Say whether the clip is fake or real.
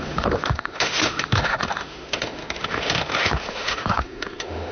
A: fake